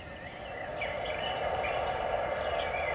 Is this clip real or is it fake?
real